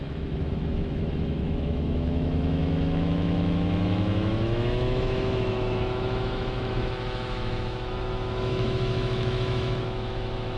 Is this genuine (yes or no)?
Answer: no